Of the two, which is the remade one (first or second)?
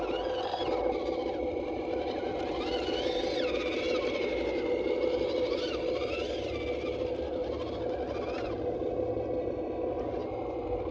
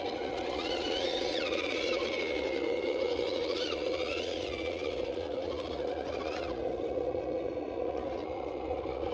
second